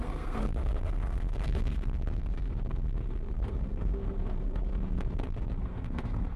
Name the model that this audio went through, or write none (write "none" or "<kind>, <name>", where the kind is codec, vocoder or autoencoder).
codec, SNAC